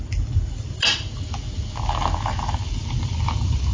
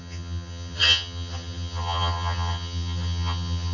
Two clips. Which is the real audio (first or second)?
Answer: first